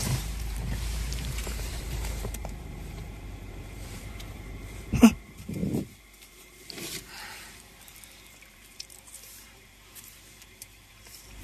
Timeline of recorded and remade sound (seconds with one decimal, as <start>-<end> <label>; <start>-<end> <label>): 0.0-5.6 remade; 5.6-6.3 recorded; 6.3-11.4 remade

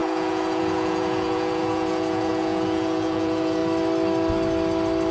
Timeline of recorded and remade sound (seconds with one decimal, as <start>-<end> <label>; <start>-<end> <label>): 0.0-3.6 remade; 3.6-5.1 recorded

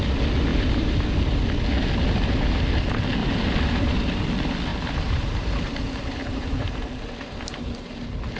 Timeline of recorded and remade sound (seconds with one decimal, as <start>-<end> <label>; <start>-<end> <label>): 0.0-0.5 recorded; 0.5-1.4 remade; 1.4-3.2 recorded; 3.2-4.2 remade; 4.2-4.7 recorded; 4.7-7.7 remade; 7.7-8.4 recorded

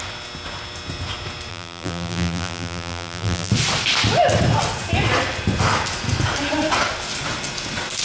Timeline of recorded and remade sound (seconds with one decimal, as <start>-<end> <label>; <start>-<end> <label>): 0.0-1.5 recorded; 1.5-3.5 remade; 3.5-8.0 recorded

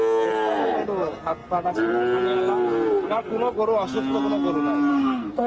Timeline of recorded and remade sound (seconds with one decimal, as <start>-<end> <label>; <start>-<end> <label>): 0.0-4.9 recorded; 4.9-5.5 remade

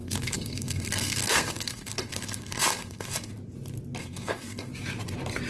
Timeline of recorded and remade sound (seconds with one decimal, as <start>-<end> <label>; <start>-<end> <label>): 0.0-3.3 remade; 3.3-4.0 recorded; 4.0-4.7 remade; 4.7-5.5 recorded

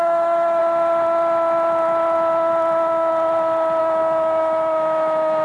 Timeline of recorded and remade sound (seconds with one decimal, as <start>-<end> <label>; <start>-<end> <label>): 0.0-0.6 remade; 0.6-3.8 recorded; 3.8-5.4 remade